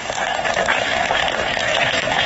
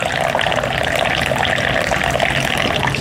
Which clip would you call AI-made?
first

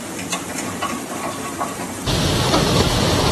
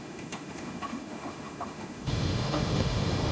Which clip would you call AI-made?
second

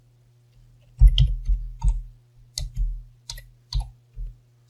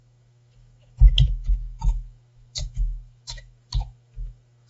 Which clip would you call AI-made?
second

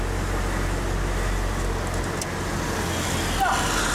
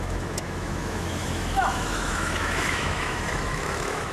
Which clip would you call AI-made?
second